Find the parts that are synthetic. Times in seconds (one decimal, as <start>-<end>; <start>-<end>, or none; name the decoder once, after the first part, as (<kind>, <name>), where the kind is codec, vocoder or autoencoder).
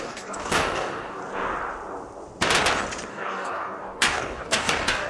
0.0-1.2 (codec, DAC); 3.1-5.1